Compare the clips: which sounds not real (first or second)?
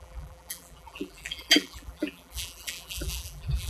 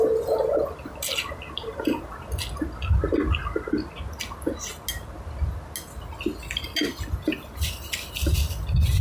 first